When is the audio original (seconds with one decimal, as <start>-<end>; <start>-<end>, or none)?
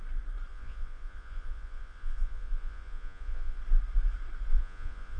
0.0-0.5; 3.6-4.5